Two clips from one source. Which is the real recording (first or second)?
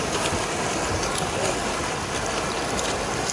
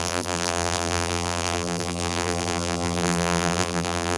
first